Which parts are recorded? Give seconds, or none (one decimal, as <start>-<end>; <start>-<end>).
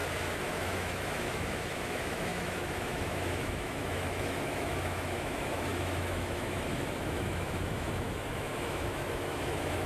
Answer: 0.0-0.5